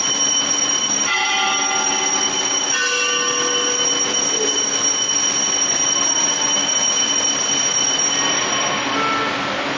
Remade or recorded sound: recorded